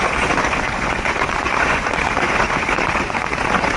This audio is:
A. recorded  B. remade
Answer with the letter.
B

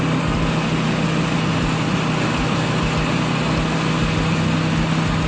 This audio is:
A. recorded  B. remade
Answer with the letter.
A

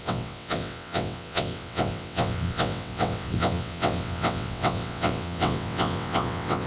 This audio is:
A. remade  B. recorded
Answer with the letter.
A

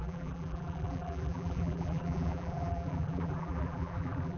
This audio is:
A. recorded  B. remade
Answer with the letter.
B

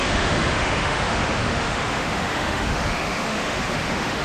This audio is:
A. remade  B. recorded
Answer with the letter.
A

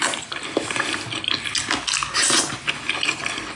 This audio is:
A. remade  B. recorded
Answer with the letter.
B